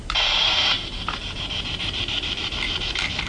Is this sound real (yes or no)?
no